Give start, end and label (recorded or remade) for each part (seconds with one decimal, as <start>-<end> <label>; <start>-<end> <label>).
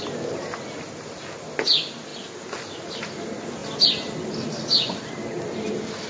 0.0-6.1 recorded